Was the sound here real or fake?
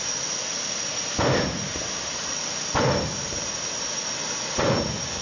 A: real